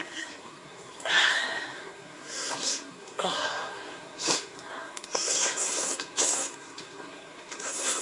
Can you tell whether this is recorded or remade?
remade